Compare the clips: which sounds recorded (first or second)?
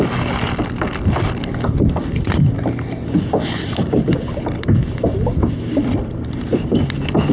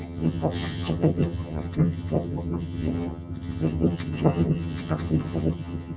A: first